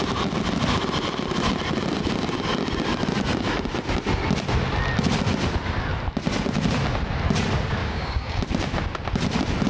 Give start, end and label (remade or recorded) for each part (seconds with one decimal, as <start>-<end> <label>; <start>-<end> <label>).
0.0-7.8 recorded; 7.8-8.4 remade; 8.4-9.7 recorded